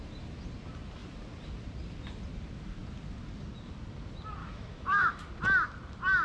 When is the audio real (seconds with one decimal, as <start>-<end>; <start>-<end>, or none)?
0.0-4.4; 5.3-6.2